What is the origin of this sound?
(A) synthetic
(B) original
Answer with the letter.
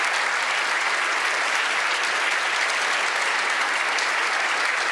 B